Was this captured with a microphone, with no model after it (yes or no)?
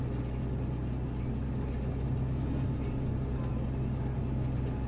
yes